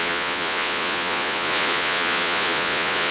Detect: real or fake fake